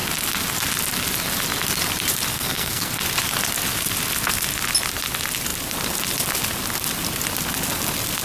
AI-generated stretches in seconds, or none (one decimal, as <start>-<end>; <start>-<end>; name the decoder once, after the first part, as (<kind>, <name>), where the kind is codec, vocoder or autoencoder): 2.3-3.0 (codec, SNAC)